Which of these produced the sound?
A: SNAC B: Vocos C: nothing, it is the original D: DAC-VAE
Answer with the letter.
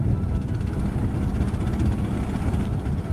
C